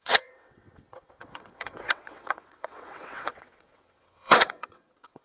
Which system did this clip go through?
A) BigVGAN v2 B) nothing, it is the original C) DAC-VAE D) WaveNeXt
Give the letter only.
D